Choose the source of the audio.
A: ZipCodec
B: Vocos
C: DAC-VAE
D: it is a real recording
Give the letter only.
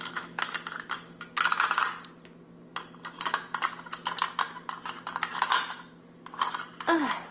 D